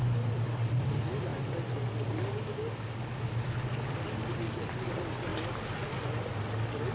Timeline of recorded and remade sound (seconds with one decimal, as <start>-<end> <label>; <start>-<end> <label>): 0.0-6.9 recorded